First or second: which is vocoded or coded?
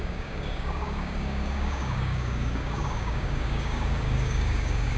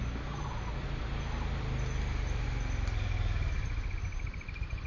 first